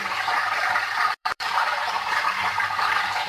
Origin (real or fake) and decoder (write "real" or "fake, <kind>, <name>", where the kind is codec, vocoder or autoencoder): fake, vocoder, BigVGAN v2